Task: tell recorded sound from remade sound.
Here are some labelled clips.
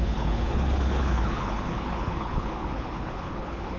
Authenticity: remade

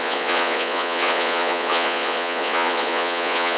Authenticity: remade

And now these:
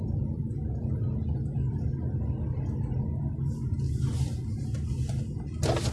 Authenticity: recorded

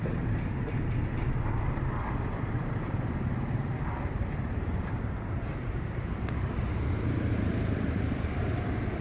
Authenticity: remade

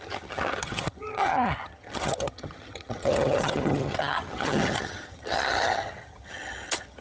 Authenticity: remade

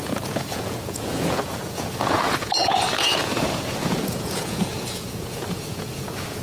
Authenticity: remade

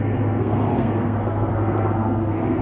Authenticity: remade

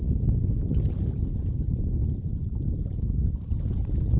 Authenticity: recorded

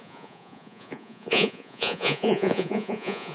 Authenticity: remade